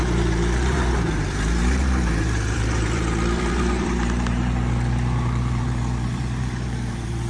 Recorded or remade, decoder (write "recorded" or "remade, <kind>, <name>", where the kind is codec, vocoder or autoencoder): remade, vocoder, BigVGAN v2